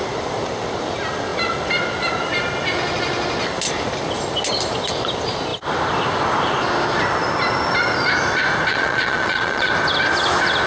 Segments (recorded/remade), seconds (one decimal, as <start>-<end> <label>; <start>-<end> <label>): 0.0-8.7 recorded; 8.7-9.7 remade; 9.7-10.7 recorded